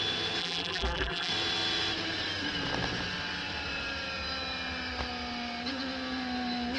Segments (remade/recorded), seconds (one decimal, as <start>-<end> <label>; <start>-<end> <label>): 0.0-0.4 recorded; 0.4-1.3 remade; 1.3-6.8 recorded